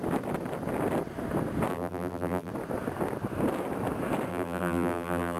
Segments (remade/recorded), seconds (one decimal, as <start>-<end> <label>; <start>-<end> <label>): 0.0-1.7 recorded; 1.7-2.5 remade; 2.5-4.3 recorded; 4.3-5.4 remade